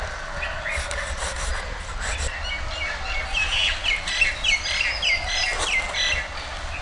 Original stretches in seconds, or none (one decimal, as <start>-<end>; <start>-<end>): 0.0-6.8